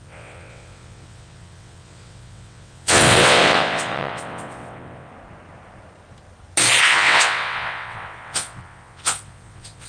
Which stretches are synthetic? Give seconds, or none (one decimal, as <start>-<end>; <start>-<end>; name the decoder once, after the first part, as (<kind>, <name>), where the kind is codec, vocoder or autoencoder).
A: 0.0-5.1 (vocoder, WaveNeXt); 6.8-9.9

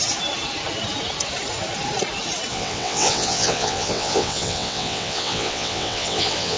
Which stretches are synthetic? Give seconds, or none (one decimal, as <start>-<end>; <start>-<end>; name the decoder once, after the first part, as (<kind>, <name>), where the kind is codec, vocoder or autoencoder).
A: 2.5-6.6 (vocoder, WaveNeXt)

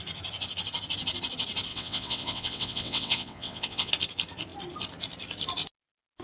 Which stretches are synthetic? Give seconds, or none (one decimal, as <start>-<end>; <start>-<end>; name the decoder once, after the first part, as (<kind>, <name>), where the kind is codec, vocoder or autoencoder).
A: 1.7-3.9 (vocoder, WaveNeXt)

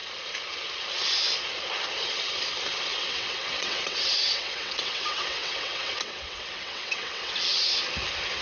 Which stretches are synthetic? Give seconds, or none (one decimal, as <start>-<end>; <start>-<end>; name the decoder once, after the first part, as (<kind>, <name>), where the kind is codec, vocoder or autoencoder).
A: 2.9-7.3 (vocoder, WaveNeXt)

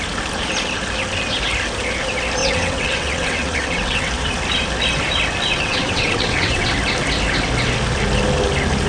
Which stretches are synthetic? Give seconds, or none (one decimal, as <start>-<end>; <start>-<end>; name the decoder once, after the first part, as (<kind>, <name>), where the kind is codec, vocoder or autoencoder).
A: 2.4-4.1 (vocoder, WaveNeXt); 5.5-6.7

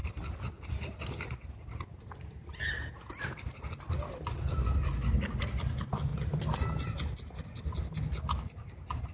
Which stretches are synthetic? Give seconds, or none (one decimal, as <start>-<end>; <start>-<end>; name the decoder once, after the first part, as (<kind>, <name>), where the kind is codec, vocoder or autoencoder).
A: none